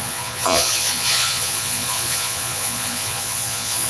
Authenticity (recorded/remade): remade